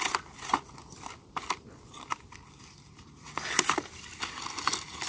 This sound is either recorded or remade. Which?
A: recorded